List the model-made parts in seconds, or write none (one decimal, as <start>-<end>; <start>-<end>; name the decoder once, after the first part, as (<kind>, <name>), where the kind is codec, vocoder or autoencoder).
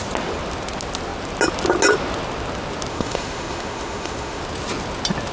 2.9-4.4 (autoencoder, DAC-VAE)